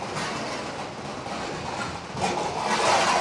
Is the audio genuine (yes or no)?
yes